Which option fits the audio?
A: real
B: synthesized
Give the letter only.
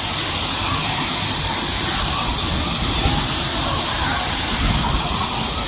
A